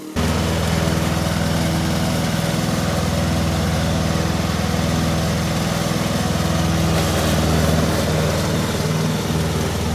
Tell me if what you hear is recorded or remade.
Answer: recorded